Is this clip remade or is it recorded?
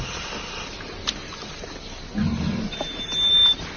recorded